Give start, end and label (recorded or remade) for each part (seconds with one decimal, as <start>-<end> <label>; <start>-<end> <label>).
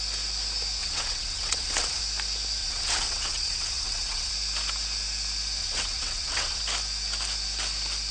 0.0-0.8 recorded; 0.8-2.0 remade; 2.0-2.6 recorded; 2.6-4.3 remade; 4.3-5.6 recorded; 5.6-6.6 remade; 6.6-8.1 recorded